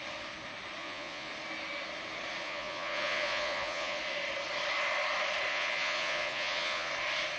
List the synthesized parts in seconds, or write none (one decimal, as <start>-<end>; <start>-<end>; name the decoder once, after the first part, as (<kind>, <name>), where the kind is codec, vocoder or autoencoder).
0.8-1.3 (vocoder, Vocos); 2.4-4.0; 5.5-6.9